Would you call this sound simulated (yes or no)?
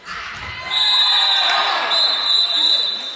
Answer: no